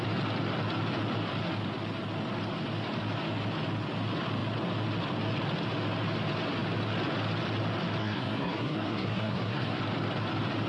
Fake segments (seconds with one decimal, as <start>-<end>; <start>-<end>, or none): 8.0-9.8